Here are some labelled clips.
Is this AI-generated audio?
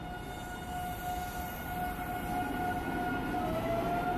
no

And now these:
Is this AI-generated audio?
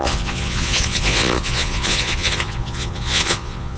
yes